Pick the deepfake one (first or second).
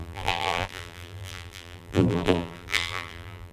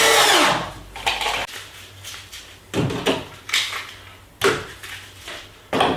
first